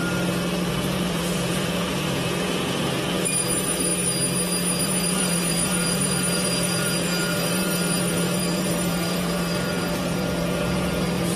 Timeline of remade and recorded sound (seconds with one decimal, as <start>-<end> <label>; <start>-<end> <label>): 0.0-0.7 recorded; 0.7-3.9 remade; 3.9-4.8 recorded; 4.8-11.4 remade